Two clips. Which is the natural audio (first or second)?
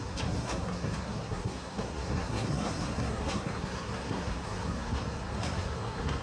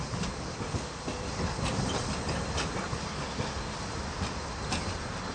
second